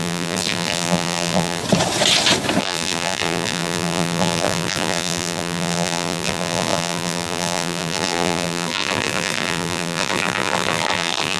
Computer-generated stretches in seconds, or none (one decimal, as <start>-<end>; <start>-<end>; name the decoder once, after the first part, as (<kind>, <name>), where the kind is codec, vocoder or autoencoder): 0.0-1.6 (vocoder, BigVGAN v2); 2.6-11.4

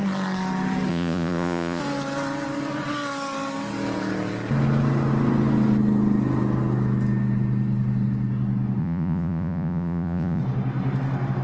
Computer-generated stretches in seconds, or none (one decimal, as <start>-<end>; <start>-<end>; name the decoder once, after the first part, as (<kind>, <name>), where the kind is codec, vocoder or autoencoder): 0.9-1.8 (vocoder, Vocos); 8.8-10.4

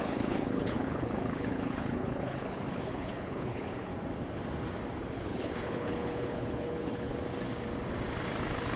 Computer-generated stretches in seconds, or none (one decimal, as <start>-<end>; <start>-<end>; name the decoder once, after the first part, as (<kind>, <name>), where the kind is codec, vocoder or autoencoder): 0.0-3.9 (codec, HILCodec); 5.0-7.1